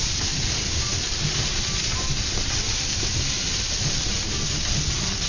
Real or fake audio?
real